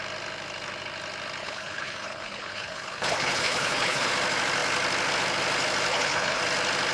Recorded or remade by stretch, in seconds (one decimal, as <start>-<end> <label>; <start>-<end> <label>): 0.0-1.4 recorded; 1.4-4.1 remade; 4.1-5.9 recorded; 5.9-6.4 remade; 6.4-6.9 recorded